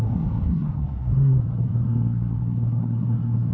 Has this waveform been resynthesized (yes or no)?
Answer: yes